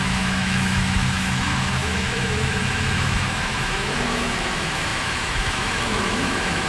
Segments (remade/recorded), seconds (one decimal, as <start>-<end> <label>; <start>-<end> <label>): 0.0-6.7 remade